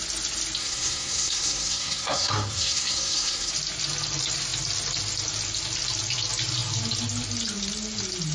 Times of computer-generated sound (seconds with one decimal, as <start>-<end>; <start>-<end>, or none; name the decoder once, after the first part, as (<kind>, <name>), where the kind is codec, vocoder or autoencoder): 0.6-3.5 (codec, SNAC)